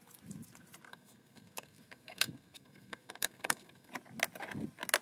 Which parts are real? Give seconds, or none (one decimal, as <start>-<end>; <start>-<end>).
0.0-0.9; 3.9-5.0